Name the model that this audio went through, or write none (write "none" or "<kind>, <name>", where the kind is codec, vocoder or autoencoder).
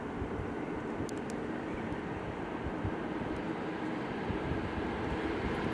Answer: none